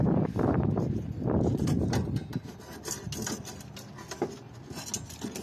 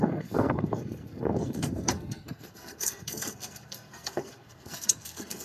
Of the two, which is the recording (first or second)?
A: first